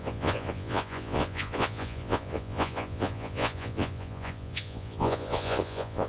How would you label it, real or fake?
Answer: fake